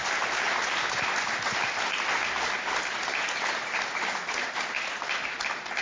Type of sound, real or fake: real